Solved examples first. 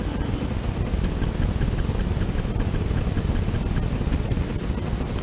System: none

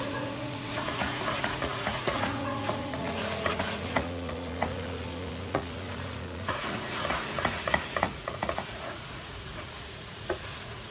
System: vocoder, Vocos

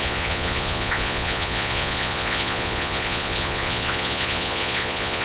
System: vocoder, Vocos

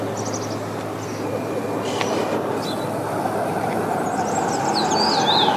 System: none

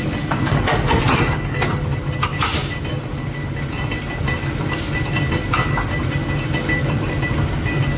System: none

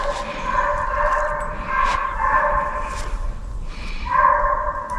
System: none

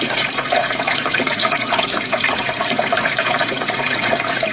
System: vocoder, Vocos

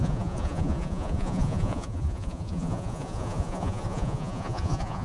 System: vocoder, Vocos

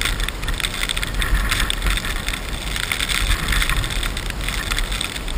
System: none